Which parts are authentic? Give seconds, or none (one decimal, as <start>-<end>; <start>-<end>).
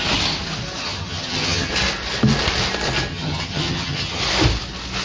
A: 0.0-0.8; 1.7-3.1; 4.2-5.0